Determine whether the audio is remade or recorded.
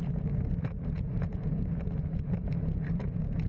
remade